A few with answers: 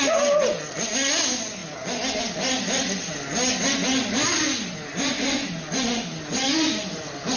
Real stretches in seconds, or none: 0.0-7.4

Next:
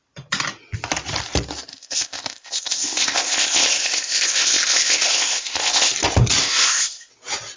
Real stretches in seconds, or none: 0.0-1.7; 5.9-6.4; 7.1-7.6

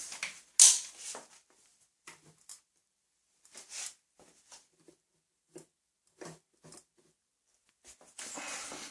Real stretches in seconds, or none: 0.0-8.9

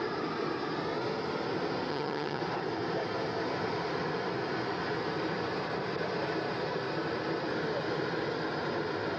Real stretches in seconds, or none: 0.0-1.9; 2.4-9.2

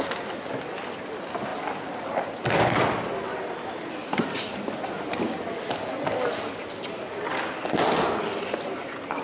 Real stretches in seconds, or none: 0.0-9.2

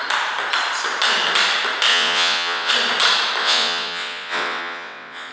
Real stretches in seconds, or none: 0.0-1.9; 2.7-3.4